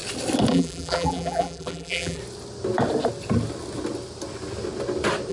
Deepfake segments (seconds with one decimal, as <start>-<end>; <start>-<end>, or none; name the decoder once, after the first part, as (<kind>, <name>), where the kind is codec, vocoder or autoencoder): 0.5-2.2 (vocoder, BigVGAN v2)